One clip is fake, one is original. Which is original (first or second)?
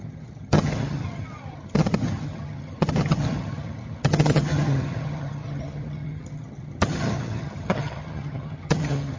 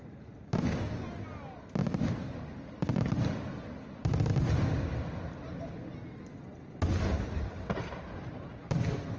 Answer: second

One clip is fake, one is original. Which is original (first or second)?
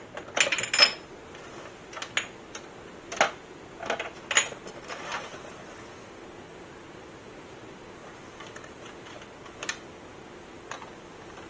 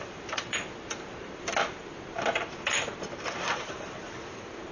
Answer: first